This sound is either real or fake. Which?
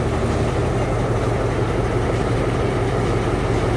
real